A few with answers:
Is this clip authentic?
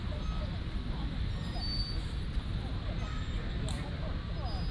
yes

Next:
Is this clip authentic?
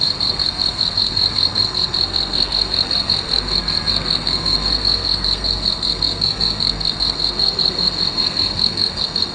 no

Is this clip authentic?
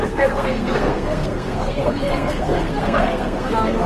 no